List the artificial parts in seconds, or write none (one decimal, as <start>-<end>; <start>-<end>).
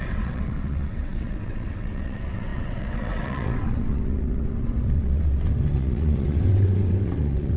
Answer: 0.0-7.6